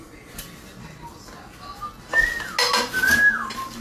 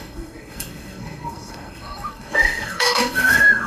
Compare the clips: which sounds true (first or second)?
first